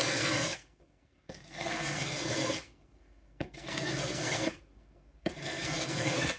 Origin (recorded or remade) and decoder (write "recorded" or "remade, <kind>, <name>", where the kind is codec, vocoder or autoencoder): remade, codec, SNAC